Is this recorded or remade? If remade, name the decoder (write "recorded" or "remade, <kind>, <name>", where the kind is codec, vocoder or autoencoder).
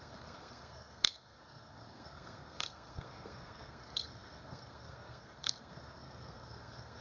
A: remade, codec, SNAC